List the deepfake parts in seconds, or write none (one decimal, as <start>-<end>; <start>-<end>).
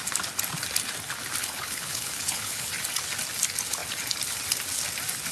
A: 1.4-2.7